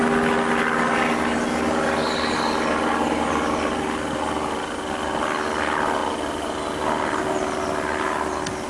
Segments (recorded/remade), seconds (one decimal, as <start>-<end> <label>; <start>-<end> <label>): 0.0-8.7 recorded

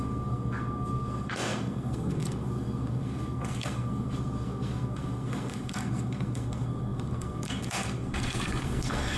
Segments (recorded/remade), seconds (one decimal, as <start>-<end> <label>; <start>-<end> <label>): 0.0-9.2 remade

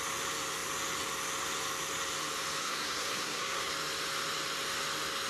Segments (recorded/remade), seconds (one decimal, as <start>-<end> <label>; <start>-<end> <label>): 0.0-2.6 recorded; 2.6-3.7 remade; 3.7-5.3 recorded

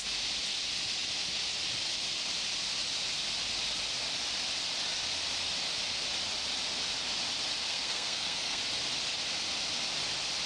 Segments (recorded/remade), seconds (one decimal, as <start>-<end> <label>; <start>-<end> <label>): 0.0-7.7 recorded; 7.7-8.6 remade; 8.6-10.5 recorded

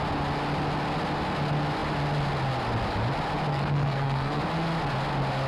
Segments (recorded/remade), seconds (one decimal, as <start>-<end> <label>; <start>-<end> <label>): 0.0-3.5 recorded; 3.5-4.4 remade; 4.4-5.5 recorded

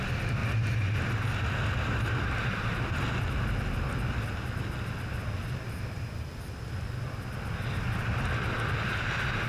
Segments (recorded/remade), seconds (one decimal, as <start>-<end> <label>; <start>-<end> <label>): 0.0-9.5 recorded

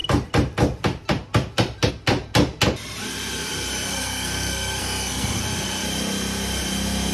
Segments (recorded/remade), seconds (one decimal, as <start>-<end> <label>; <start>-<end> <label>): 0.0-3.9 recorded; 3.9-5.4 remade; 5.4-7.1 recorded

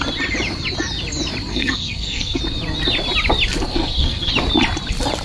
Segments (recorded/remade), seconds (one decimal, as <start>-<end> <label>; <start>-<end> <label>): 0.0-1.5 recorded; 1.5-2.4 remade; 2.4-3.7 recorded; 3.7-4.3 remade; 4.3-5.2 recorded